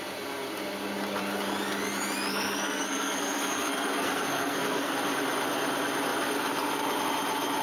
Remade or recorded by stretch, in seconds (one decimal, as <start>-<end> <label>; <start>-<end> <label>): 0.0-2.3 recorded; 2.3-4.9 remade; 4.9-7.6 recorded